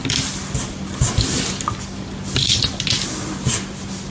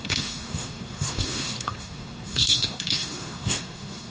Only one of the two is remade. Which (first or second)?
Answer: second